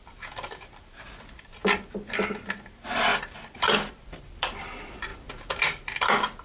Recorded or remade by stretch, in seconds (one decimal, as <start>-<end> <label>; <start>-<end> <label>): 0.0-1.6 remade; 1.6-2.7 recorded; 2.7-6.4 remade

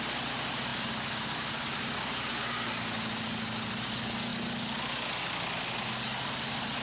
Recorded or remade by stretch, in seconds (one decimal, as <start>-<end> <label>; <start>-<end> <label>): 0.0-6.8 recorded

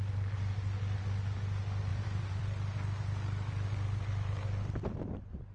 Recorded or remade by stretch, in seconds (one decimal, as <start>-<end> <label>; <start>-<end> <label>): 0.0-1.9 recorded; 1.9-2.4 remade; 2.4-5.5 recorded

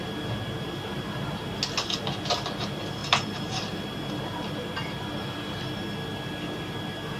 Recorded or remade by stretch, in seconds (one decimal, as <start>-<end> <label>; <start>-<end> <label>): 0.0-3.0 recorded; 3.0-4.1 remade; 4.1-7.2 recorded

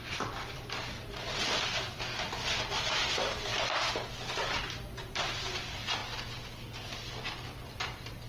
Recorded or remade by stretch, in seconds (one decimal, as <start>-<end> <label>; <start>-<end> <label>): 0.0-3.5 remade; 3.5-4.3 recorded; 4.3-6.0 remade; 6.0-6.8 recorded; 6.8-8.3 remade